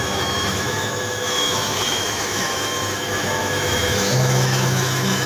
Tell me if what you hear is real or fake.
fake